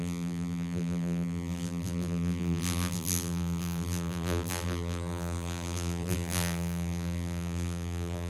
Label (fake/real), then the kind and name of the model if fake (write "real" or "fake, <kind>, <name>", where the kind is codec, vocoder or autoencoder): fake, vocoder, BigVGAN v2